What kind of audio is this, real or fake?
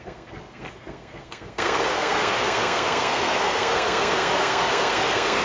fake